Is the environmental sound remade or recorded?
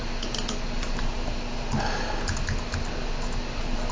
recorded